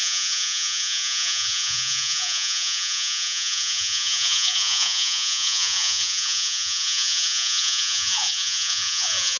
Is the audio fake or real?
fake